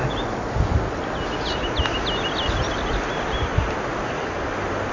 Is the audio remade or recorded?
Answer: recorded